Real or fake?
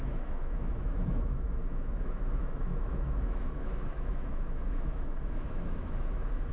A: fake